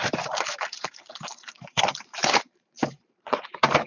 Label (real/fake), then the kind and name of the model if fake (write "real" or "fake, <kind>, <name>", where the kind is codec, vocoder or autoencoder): fake, vocoder, BigVGAN v2